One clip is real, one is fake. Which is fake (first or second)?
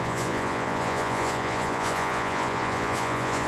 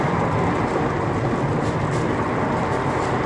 first